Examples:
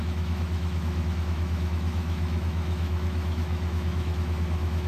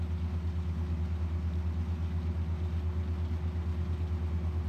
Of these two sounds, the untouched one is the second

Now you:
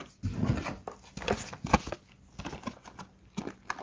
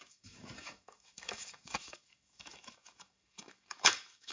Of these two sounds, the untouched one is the first